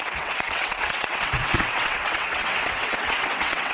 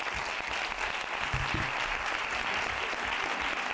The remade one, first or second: first